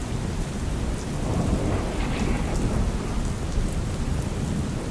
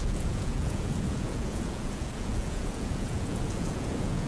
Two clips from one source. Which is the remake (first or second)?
second